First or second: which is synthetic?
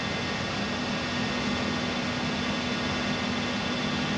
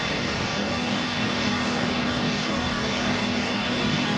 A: second